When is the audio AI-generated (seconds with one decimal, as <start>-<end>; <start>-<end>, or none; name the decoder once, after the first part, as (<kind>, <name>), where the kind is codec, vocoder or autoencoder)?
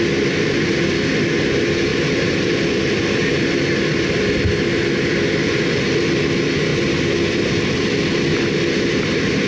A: 1.9-3.3 (vocoder, BigVGAN v2)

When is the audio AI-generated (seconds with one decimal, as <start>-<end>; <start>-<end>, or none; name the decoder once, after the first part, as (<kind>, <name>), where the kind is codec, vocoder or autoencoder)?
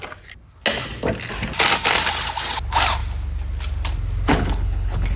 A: 4.3-5.2 (codec, HILCodec)